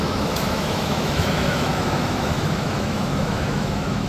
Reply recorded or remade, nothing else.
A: remade